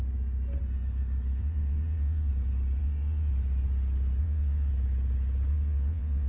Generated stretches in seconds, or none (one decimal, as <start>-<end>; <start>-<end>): 1.4-2.3; 2.8-3.3; 4.2-4.7; 5.5-6.3